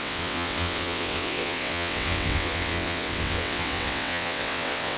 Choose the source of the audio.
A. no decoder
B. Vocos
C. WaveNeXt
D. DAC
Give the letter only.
C